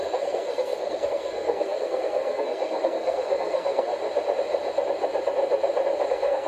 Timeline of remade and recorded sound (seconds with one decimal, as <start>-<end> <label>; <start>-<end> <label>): 0.0-3.9 remade; 3.9-6.1 recorded; 6.1-6.5 remade

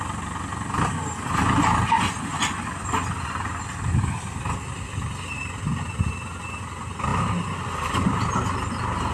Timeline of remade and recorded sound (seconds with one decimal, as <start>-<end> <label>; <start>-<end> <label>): 0.0-9.1 recorded

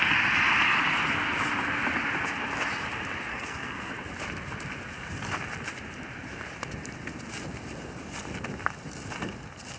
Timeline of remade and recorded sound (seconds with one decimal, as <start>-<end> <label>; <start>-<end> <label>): 0.0-3.3 recorded; 3.3-3.9 remade; 3.9-9.8 recorded

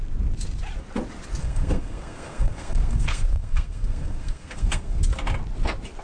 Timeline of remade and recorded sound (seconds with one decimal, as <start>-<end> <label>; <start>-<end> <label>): 0.0-1.4 recorded; 1.4-5.0 remade; 5.0-6.0 recorded

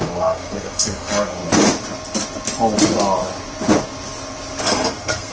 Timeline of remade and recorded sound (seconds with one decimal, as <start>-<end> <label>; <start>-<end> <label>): 0.0-1.4 remade; 1.4-4.6 recorded; 4.6-5.3 remade

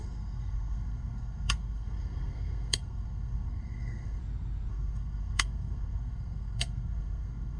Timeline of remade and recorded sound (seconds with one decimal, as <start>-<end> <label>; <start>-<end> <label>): 0.0-4.2 remade; 4.2-4.7 recorded; 4.7-7.6 remade